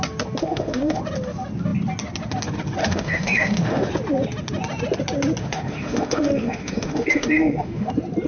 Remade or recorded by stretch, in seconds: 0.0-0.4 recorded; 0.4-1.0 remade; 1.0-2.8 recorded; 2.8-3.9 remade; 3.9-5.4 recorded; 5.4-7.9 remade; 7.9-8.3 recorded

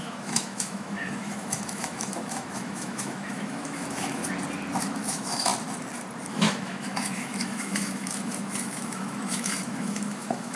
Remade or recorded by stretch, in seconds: 0.0-4.2 remade; 4.2-4.8 recorded; 4.8-5.5 remade; 5.5-6.3 recorded; 6.3-10.6 remade